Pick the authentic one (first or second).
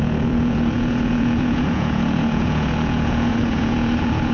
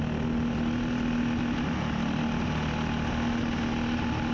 second